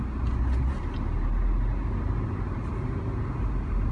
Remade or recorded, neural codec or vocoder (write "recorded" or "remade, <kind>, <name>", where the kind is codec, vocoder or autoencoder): recorded